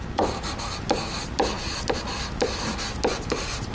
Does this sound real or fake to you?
real